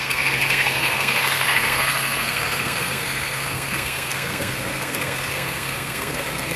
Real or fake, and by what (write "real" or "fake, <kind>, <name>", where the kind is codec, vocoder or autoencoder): fake, codec, SNAC